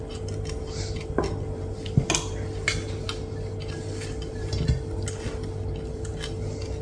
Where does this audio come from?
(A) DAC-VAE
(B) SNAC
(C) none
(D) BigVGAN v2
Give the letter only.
C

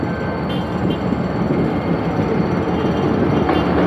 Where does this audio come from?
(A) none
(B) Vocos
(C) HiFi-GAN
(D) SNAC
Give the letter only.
A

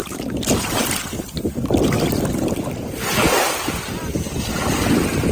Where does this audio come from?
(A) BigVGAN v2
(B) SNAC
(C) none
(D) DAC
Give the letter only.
C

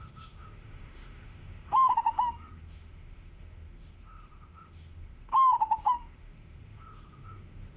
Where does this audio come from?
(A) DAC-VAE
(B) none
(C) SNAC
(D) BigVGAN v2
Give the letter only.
A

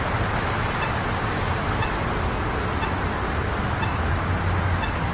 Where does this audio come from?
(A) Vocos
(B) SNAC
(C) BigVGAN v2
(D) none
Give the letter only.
D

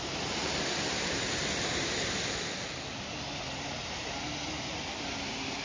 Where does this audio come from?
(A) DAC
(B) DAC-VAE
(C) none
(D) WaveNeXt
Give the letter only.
C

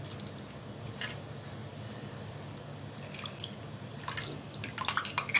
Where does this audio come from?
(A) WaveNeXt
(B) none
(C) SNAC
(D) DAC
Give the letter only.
B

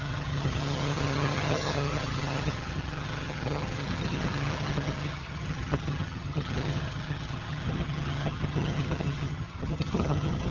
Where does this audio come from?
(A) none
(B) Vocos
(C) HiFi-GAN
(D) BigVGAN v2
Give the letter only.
C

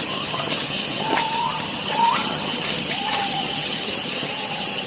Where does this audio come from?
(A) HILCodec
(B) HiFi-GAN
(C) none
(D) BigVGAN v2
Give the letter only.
B